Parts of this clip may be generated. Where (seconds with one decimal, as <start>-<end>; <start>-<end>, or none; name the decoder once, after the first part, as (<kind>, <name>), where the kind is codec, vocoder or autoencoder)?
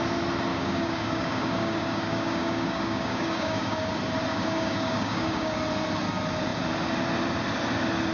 0.5-3.9 (codec, DAC); 4.3-5.6